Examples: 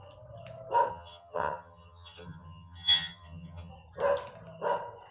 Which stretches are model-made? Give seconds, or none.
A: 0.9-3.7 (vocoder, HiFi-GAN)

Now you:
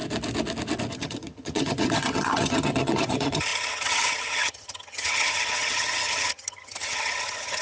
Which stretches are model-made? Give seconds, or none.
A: 0.9-7.6 (vocoder, HiFi-GAN)

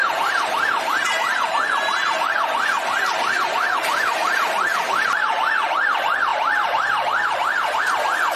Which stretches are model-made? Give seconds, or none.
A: 0.0-2.2 (vocoder, BigVGAN v2); 4.7-5.7; 6.3-7.8

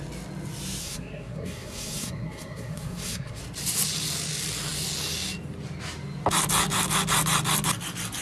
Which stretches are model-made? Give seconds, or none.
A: 0.8-3.4 (codec, SNAC)

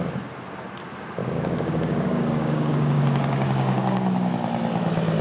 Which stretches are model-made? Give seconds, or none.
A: 1.2-4.3 (codec, DAC)

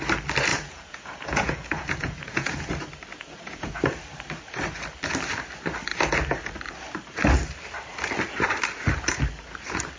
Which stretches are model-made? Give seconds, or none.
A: 0.5-2.7 (vocoder, Vocos); 3.1-3.8

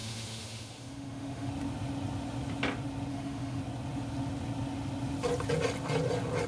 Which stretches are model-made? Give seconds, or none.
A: 0.0-1.5 (autoencoder, DAC-VAE); 3.1-3.6

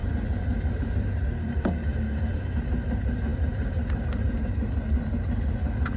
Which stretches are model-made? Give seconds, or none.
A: 0.0-6.0 (vocoder, BigVGAN v2)